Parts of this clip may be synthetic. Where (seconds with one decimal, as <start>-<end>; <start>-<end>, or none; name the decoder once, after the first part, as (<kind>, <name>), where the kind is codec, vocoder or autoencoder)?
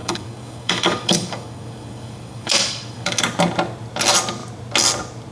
0.0-3.2 (codec, DAC)